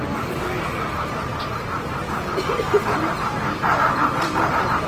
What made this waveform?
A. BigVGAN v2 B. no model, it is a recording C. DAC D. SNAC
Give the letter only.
A